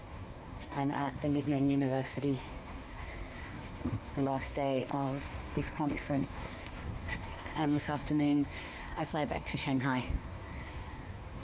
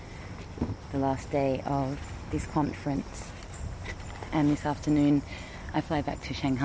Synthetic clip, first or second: first